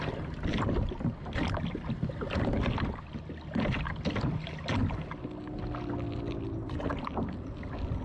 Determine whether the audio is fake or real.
real